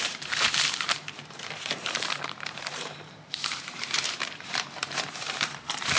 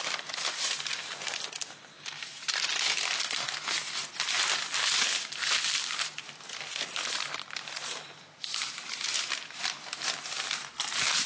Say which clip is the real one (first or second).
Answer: second